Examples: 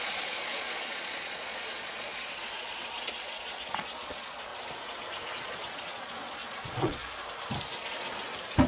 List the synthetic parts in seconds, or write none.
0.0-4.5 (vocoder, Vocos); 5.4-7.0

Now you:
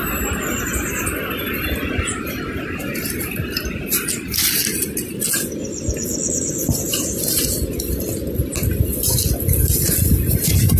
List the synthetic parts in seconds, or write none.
none

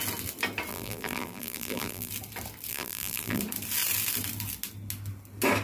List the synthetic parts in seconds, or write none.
0.7-2.1 (vocoder, BigVGAN v2); 2.7-3.4

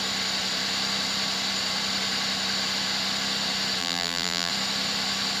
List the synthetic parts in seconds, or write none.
3.8-4.5 (vocoder, BigVGAN v2)

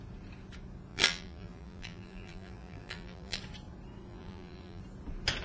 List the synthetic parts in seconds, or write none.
0.9-3.4 (vocoder, BigVGAN v2); 4.1-4.8

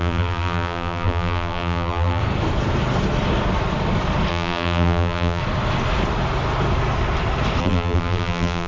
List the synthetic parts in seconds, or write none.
0.0-2.2 (vocoder, BigVGAN v2); 4.3-5.4; 7.6-8.7

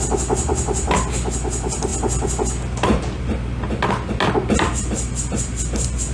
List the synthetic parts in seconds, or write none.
none

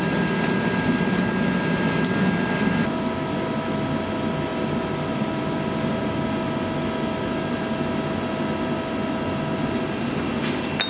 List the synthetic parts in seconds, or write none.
none